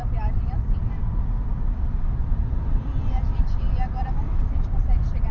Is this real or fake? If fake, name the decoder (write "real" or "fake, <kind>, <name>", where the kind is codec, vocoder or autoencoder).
fake, vocoder, BigVGAN v2